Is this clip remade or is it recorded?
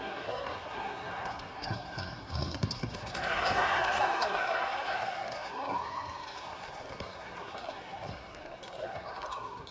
remade